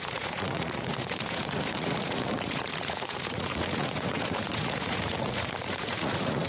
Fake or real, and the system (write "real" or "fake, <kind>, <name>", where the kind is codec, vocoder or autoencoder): fake, vocoder, Vocos